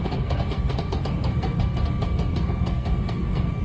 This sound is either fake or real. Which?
fake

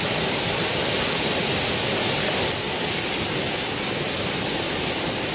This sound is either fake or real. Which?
real